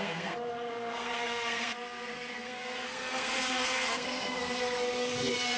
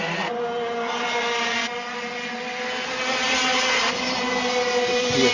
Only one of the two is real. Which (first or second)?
second